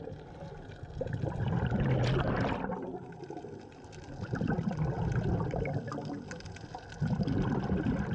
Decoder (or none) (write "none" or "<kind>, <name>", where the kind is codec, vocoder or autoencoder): none